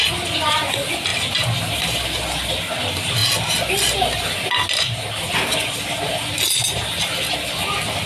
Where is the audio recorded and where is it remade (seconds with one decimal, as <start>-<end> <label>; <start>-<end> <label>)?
0.0-8.1 recorded